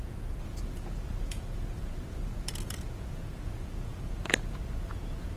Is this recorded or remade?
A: remade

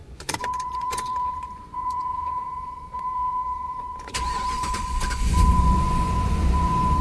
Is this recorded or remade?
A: remade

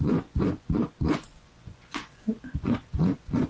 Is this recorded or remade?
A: remade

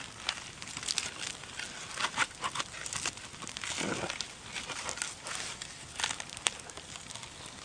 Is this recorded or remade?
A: recorded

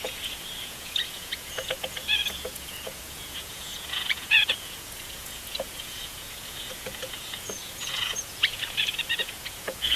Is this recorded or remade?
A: remade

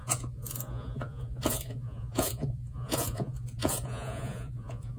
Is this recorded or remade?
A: remade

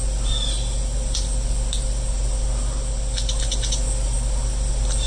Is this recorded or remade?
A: recorded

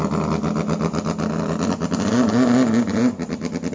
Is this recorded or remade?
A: recorded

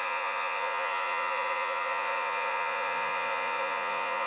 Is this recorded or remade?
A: remade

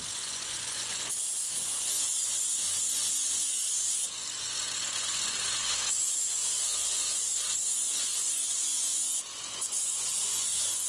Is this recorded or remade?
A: remade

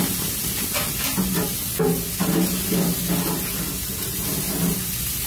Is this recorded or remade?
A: recorded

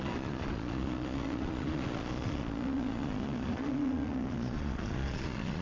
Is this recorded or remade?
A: remade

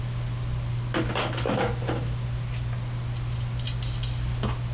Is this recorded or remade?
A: recorded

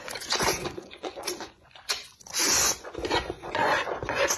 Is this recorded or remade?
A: remade